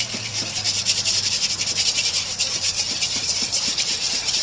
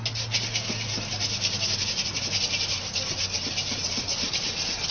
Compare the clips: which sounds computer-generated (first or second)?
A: first